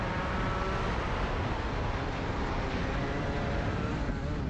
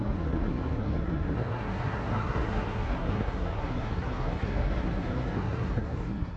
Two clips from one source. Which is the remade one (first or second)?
second